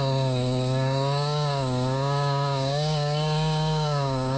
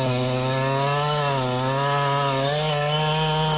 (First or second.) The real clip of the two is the second